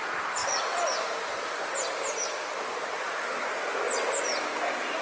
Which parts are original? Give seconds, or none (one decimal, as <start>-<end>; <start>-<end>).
0.0-5.0